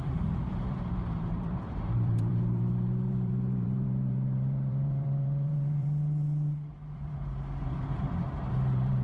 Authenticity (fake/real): fake